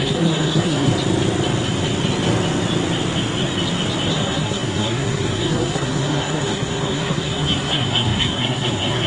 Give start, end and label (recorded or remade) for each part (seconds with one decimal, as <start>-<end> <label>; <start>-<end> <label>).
0.0-0.9 remade; 0.9-4.1 recorded; 4.1-9.1 remade